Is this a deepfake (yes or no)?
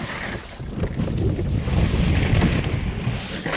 no